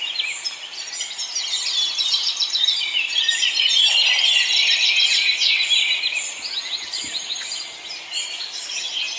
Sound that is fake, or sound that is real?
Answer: fake